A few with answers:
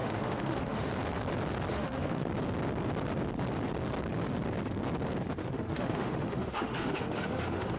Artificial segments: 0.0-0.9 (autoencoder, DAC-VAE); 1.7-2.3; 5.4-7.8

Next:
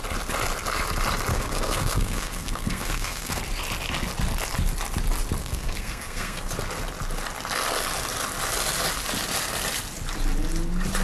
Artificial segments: 1.3-3.4 (codec, SNAC); 5.4-6.5

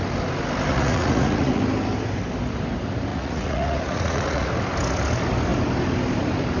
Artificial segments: 0.7-1.6 (vocoder, Vocos); 3.1-4.5

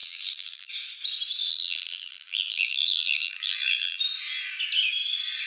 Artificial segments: 0.0-0.7 (vocoder, BigVGAN v2); 1.5-4.0

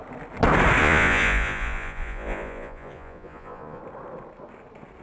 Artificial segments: 0.8-3.8 (vocoder, Vocos)